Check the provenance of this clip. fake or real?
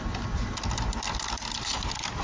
real